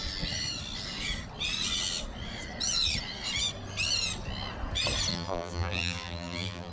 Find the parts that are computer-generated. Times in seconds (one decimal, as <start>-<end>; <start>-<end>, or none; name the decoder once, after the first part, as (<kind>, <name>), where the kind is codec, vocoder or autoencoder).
5.1-6.7 (vocoder, BigVGAN v2)